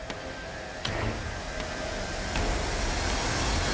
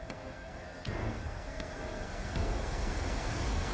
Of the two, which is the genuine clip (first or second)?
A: first